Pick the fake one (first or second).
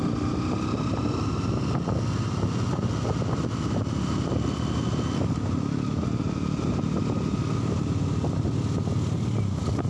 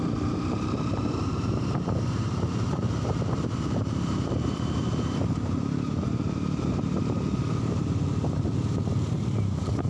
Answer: second